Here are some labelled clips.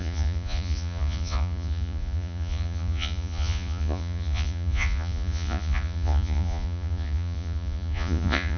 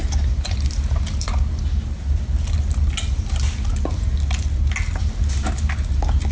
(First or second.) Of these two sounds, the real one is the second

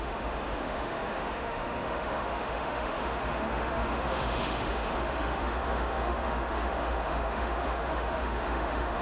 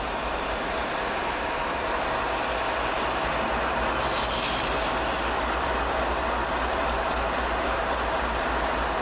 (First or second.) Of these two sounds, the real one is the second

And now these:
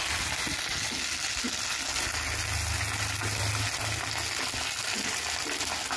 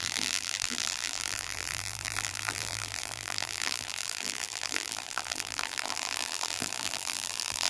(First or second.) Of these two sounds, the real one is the first